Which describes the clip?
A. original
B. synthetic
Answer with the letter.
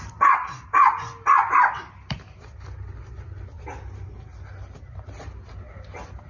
A